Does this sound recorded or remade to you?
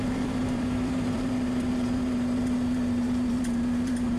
remade